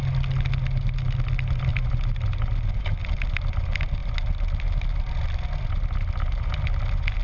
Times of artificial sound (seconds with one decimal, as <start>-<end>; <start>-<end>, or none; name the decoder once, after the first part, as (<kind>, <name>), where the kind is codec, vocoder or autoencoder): none